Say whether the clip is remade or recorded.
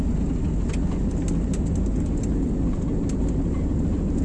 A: recorded